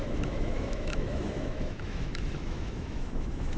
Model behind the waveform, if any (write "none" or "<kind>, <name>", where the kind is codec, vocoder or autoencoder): autoencoder, DAC-VAE